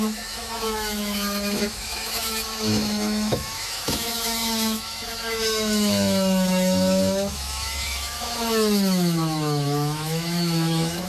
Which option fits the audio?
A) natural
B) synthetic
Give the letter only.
B